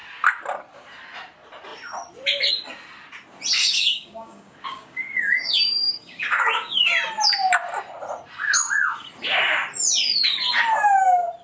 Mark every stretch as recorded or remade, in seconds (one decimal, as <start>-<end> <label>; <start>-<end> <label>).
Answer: 0.0-3.6 recorded; 3.6-6.9 remade; 6.9-11.4 recorded